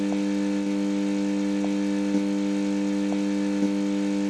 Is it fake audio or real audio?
real